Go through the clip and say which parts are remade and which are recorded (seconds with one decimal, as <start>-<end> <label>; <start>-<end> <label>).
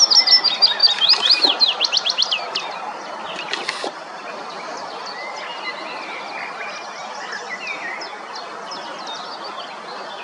0.0-0.8 recorded; 0.8-5.3 remade; 5.3-7.0 recorded; 7.0-7.6 remade; 7.6-10.2 recorded